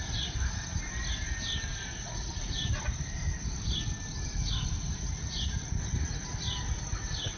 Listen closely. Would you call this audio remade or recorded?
recorded